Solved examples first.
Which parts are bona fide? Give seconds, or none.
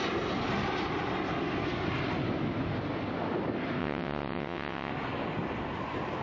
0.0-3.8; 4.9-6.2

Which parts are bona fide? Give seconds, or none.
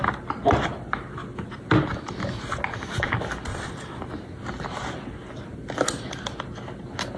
0.0-3.5; 4.0-7.2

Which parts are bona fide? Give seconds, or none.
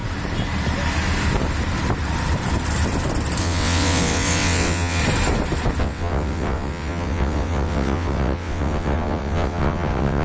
0.0-3.4; 5.0-5.8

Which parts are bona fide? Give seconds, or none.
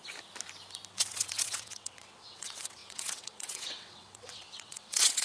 0.0-0.9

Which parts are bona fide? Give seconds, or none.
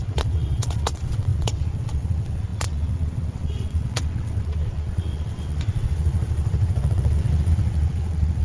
none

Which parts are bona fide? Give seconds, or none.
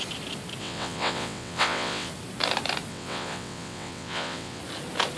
0.0-0.6; 2.1-2.9; 4.6-5.2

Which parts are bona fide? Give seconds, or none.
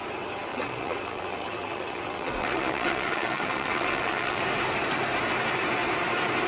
0.0-0.5; 4.4-6.5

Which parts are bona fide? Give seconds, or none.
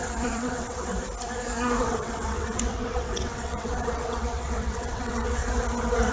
0.9-1.8; 5.4-6.1